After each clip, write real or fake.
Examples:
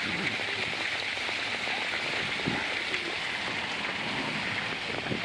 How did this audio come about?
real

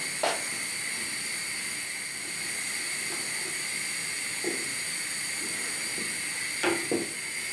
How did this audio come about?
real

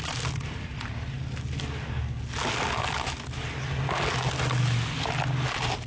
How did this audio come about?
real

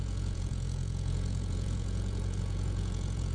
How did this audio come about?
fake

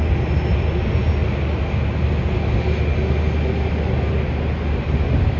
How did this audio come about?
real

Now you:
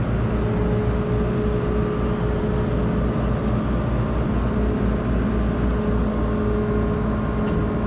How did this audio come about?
real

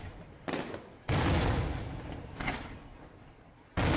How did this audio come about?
real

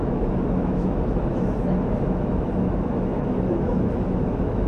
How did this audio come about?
fake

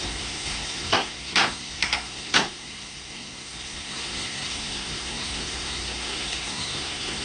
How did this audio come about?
fake